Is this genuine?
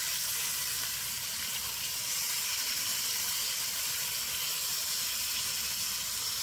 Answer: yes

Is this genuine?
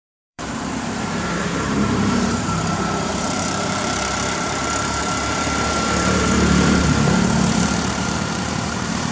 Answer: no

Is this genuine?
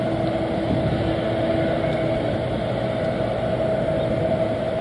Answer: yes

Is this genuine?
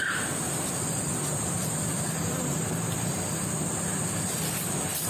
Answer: yes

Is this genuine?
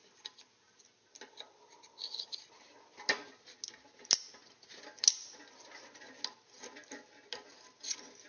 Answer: yes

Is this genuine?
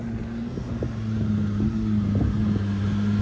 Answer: yes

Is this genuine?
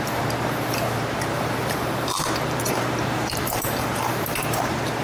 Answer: no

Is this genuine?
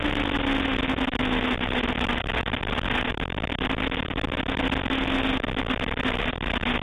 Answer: yes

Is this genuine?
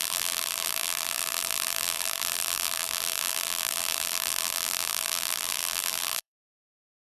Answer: no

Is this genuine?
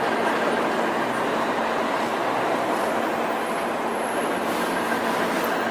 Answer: yes